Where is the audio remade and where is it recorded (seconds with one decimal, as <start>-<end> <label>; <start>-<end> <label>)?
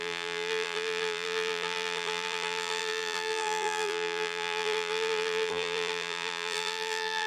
0.0-7.3 remade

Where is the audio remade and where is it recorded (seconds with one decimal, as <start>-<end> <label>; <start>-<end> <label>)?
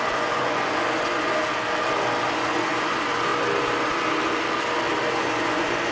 0.0-1.3 remade; 1.3-2.2 recorded; 2.2-3.3 remade; 3.3-5.1 recorded; 5.1-5.9 remade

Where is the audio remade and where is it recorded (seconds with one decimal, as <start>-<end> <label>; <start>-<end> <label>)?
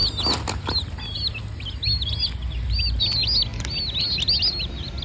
0.0-5.0 recorded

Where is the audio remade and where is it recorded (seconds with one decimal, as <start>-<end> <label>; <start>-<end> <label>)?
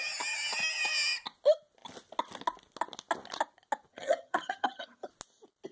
0.0-3.9 recorded; 3.9-5.1 remade; 5.1-5.7 recorded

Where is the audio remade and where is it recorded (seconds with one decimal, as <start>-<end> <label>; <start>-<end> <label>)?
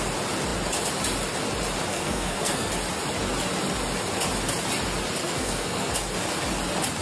0.0-1.9 recorded; 1.9-2.7 remade; 2.7-5.2 recorded; 5.2-5.9 remade; 5.9-7.0 recorded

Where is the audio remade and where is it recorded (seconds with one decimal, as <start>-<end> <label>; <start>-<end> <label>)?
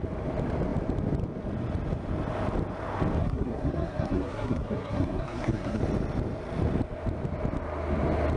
0.0-3.2 recorded; 3.2-5.8 remade; 5.8-8.4 recorded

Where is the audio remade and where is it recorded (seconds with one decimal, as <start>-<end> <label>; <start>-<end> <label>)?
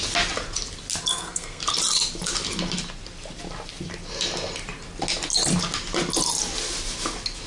0.0-1.1 recorded; 1.1-1.6 remade; 1.6-7.5 recorded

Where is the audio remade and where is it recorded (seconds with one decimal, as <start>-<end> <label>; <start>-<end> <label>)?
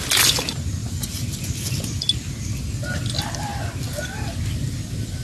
0.0-0.8 recorded; 0.8-1.3 remade; 1.3-5.2 recorded